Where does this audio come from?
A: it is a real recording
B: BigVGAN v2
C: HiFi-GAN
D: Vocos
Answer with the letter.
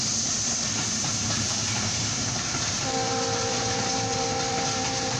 B